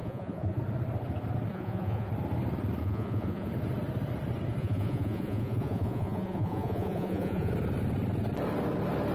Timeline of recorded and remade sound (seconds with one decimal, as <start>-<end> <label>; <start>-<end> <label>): 0.0-0.6 remade; 0.6-1.5 recorded; 1.5-2.1 remade; 2.1-2.8 recorded; 2.8-3.5 remade; 3.5-4.6 recorded; 4.6-7.5 remade; 7.5-9.1 recorded

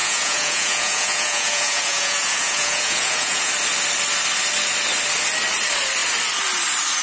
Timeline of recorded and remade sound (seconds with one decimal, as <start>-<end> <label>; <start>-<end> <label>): 0.0-3.5 remade; 3.5-7.0 recorded

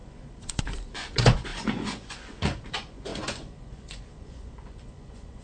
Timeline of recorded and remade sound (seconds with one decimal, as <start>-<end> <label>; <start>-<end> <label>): 0.0-5.4 remade

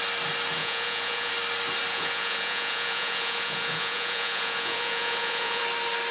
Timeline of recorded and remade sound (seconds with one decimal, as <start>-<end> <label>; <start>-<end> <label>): 0.0-0.6 recorded; 0.6-1.3 remade; 1.3-1.9 recorded; 1.9-5.6 remade; 5.6-6.1 recorded

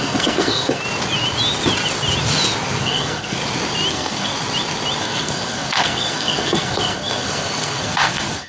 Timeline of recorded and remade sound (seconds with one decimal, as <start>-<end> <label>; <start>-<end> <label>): 0.0-0.8 remade; 0.8-2.8 recorded; 2.8-3.4 remade; 3.4-3.9 recorded; 3.9-4.3 remade; 4.3-5.0 recorded; 5.0-8.5 remade

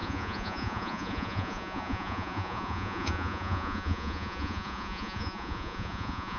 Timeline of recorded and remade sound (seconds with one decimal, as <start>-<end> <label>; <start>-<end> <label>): 0.0-6.4 remade

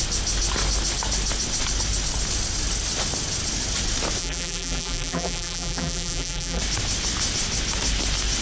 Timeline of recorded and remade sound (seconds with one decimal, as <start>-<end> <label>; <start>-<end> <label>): 0.0-4.2 recorded; 4.2-6.6 remade; 6.6-8.4 recorded